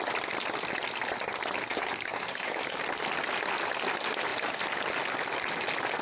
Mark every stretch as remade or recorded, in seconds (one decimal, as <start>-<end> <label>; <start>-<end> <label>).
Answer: 0.0-1.7 recorded; 1.7-2.8 remade; 2.8-6.0 recorded